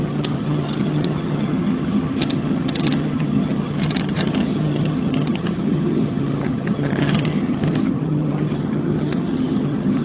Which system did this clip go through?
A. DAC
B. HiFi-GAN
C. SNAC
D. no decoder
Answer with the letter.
B